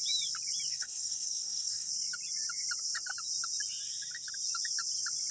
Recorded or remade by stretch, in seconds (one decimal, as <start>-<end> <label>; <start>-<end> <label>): 0.0-0.7 recorded; 0.7-1.9 remade; 1.9-5.3 recorded